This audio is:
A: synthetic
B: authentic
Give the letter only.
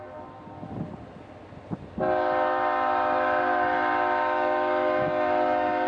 B